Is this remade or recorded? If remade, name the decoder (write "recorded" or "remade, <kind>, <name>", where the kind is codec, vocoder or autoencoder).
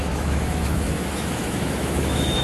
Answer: remade, autoencoder, DAC-VAE